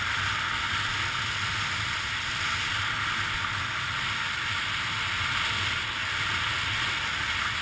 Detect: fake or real real